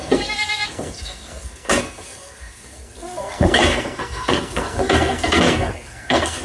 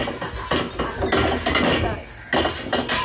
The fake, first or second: first